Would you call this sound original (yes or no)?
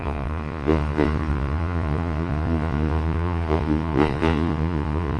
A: no